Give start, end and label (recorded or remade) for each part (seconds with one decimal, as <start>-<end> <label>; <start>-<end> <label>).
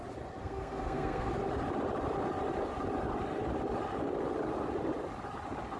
0.0-0.4 recorded; 0.4-1.3 remade; 1.3-5.8 recorded